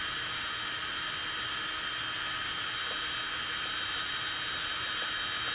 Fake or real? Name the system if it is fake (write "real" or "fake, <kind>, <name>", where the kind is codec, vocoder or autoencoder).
real